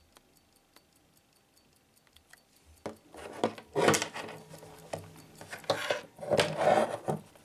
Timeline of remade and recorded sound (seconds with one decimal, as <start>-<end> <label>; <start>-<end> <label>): 0.0-7.4 recorded